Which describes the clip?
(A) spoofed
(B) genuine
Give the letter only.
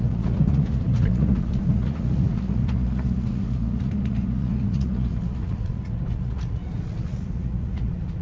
A